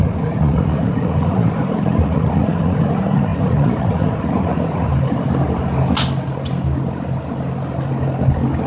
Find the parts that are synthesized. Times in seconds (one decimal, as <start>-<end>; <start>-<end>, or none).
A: 0.0-4.9